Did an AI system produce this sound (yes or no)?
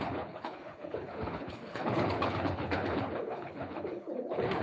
yes